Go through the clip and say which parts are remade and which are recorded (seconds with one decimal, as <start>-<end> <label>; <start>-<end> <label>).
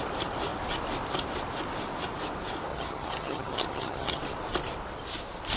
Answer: 0.0-2.7 recorded; 2.7-4.2 remade; 4.2-5.6 recorded